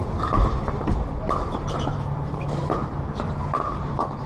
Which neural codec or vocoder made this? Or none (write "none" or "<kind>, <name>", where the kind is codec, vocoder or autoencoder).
vocoder, BigVGAN v2